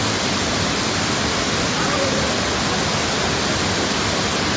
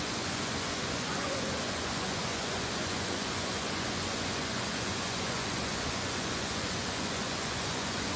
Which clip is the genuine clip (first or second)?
first